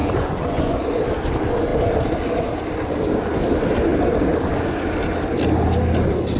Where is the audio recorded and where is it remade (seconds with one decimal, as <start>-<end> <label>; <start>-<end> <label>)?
0.0-0.8 remade; 0.8-6.4 recorded